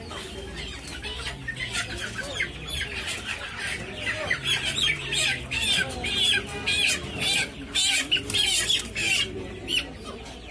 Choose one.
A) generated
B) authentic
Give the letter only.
B